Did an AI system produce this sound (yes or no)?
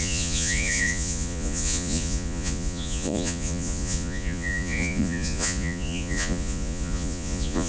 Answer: yes